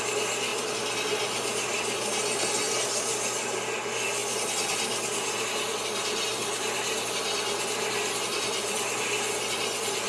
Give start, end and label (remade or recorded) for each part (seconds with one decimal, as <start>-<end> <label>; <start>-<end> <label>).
0.0-10.1 recorded